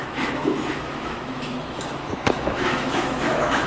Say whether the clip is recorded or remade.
remade